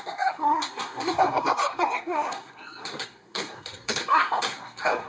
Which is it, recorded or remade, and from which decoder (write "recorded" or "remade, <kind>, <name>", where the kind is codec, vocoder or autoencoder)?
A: remade, codec, SNAC